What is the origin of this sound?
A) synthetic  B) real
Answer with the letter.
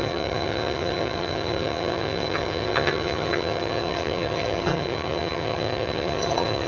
A